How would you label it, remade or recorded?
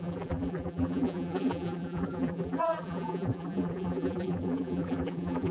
remade